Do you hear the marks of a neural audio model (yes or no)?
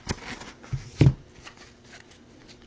no